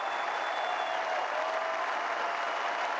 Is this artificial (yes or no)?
no